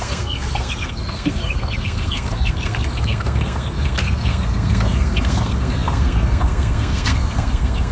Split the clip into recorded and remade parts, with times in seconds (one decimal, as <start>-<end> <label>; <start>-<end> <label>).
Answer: 0.0-7.9 remade